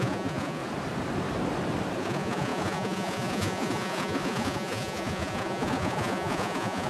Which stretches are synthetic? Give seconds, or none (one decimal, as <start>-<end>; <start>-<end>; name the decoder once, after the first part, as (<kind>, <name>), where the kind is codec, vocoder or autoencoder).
0.0-0.6 (vocoder, Vocos); 2.0-6.9